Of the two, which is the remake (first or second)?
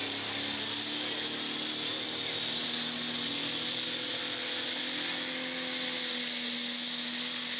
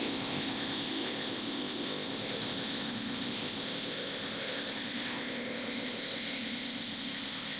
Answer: second